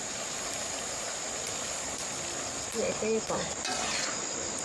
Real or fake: real